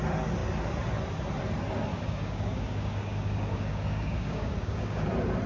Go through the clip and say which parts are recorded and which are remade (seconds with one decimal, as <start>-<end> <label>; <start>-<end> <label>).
0.0-1.9 recorded; 1.9-5.1 remade; 5.1-5.5 recorded

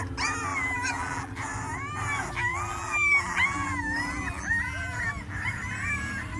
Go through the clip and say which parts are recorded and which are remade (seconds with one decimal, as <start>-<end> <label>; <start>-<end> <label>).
0.0-0.5 recorded; 0.5-1.3 remade; 1.3-2.5 recorded; 2.5-5.1 remade; 5.1-6.4 recorded

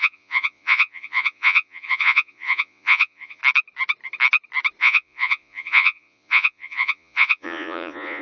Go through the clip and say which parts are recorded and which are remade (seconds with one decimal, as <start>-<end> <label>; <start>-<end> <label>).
0.0-3.4 remade; 3.4-4.8 recorded; 4.8-8.2 remade